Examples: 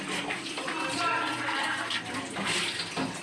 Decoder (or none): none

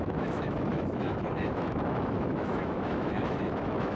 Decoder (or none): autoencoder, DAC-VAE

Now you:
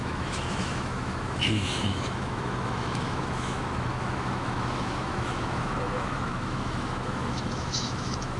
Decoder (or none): autoencoder, DAC-VAE